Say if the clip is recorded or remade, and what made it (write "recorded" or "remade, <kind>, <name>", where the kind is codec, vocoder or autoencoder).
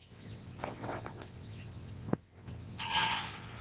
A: remade, vocoder, WaveNeXt